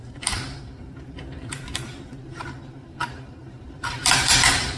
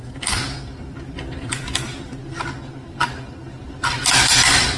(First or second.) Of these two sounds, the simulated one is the first